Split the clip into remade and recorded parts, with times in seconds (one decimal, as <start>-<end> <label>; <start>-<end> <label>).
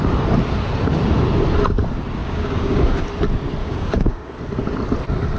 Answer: 0.0-2.2 recorded; 2.2-3.0 remade; 3.0-3.6 recorded; 3.6-4.4 remade; 4.4-5.4 recorded